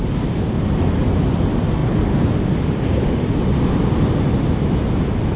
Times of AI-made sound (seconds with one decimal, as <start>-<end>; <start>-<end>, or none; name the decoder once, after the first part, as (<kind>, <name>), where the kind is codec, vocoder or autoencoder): none

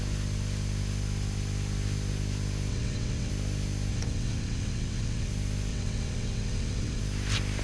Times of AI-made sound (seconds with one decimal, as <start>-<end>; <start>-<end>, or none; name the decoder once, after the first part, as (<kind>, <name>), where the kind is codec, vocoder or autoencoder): 2.7-3.3 (vocoder, WaveNeXt); 3.9-5.3; 5.7-7.0

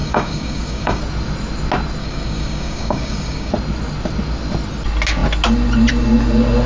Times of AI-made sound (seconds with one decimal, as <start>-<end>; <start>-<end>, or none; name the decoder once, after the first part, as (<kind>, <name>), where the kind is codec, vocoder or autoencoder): 0.0-1.0 (codec, DAC); 2.0-3.5

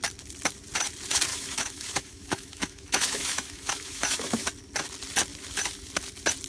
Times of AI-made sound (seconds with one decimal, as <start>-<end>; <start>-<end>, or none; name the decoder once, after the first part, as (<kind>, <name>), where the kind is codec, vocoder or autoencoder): 1.3-4.5 (autoencoder, DAC-VAE)